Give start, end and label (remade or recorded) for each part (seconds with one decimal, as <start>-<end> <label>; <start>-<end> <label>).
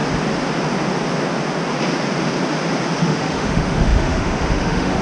0.0-3.0 recorded; 3.0-5.0 remade